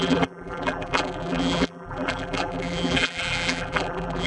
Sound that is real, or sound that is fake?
fake